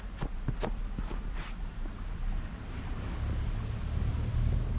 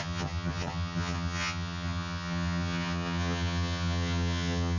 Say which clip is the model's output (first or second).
second